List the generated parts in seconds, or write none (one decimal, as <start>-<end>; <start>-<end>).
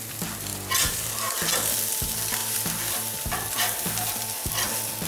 none